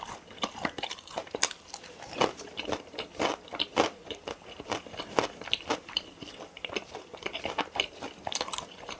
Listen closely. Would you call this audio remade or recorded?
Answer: remade